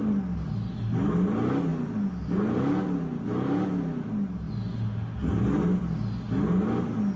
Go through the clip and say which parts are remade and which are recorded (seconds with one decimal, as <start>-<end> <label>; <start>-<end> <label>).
0.0-7.2 recorded